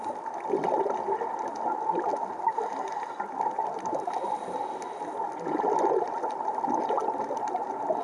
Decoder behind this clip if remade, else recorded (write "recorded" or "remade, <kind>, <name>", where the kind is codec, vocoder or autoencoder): recorded